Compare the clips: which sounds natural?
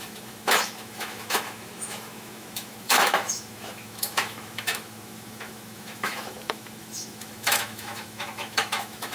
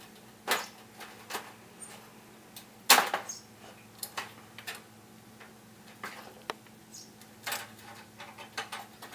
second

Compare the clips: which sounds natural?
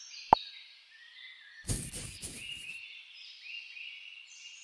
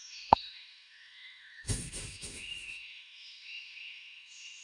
first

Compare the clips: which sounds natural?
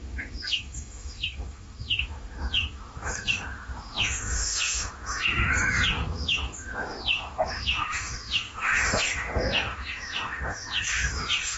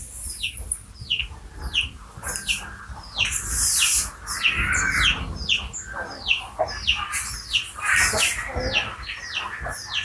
second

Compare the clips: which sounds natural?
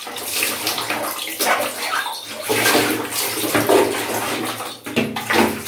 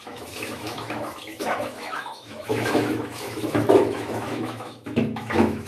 first